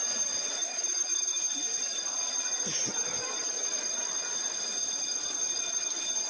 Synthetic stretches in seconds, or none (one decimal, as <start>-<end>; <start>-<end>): 0.6-1.4